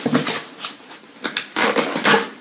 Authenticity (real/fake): real